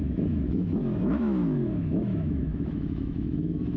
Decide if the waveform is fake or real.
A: fake